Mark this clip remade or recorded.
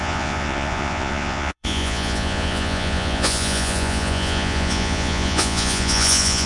remade